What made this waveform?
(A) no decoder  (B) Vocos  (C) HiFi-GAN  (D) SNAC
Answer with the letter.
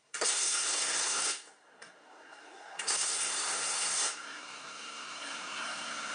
D